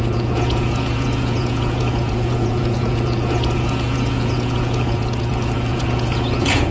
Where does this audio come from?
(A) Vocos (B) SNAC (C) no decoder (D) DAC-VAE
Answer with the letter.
A